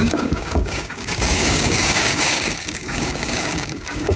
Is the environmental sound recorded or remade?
remade